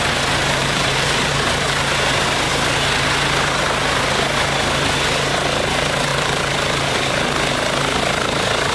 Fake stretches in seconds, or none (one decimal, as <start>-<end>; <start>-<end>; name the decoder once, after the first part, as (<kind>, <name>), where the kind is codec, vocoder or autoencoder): 0.6-1.3 (vocoder, BigVGAN v2)